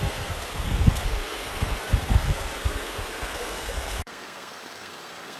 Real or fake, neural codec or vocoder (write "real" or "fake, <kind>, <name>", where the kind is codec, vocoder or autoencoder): fake, codec, SNAC